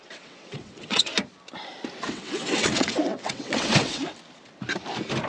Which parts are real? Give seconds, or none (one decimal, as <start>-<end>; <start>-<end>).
1.1-2.1; 4.0-5.3